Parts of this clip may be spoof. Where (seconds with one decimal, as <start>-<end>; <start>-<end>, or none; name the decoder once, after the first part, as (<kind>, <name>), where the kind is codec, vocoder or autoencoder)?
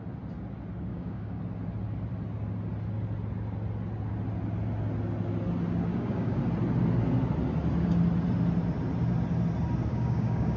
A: 0.9-1.4 (codec, DAC); 5.9-6.4; 9.9-10.6